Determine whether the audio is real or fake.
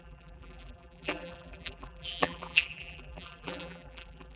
fake